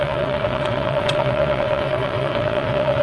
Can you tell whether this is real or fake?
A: fake